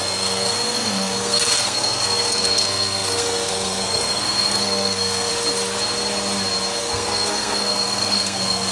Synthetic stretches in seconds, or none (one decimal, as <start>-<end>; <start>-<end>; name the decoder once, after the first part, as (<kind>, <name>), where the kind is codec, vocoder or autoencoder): 0.0-5.3 (codec, SNAC); 6.8-8.7